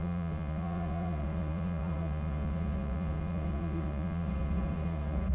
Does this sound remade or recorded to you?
remade